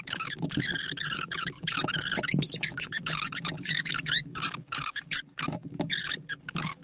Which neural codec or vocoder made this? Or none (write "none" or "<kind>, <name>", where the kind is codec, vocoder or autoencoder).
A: codec, DAC